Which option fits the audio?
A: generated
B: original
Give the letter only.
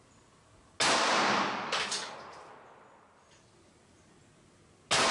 B